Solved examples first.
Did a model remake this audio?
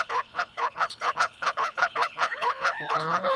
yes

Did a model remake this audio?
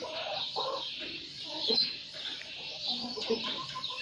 yes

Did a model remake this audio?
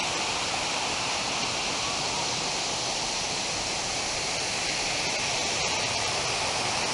no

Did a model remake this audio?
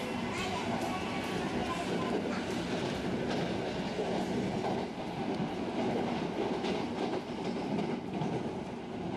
no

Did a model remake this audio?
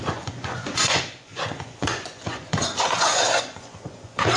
yes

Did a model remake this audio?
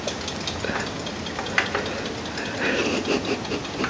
no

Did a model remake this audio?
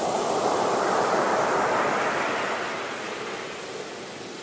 no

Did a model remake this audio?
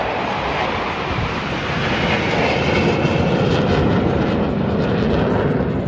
no